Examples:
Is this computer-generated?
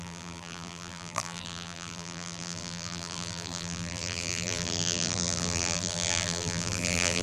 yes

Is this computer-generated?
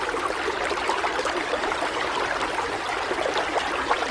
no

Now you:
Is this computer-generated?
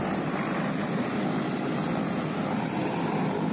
no